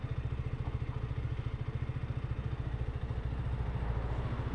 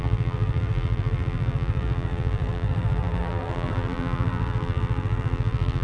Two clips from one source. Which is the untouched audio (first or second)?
first